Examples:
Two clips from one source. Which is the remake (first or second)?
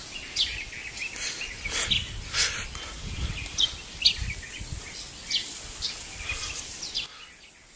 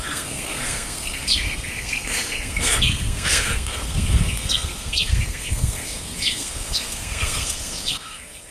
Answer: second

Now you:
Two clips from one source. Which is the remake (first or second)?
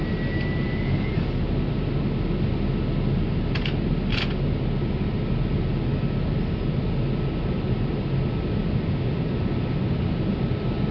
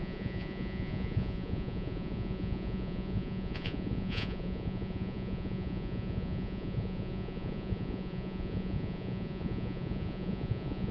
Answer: second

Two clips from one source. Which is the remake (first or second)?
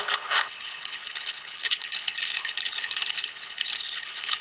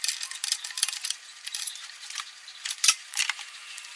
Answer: first